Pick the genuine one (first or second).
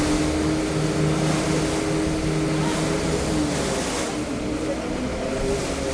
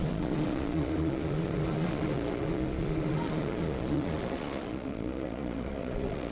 first